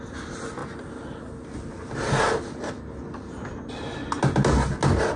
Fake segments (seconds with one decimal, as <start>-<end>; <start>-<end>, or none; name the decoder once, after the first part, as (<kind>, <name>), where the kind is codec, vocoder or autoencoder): none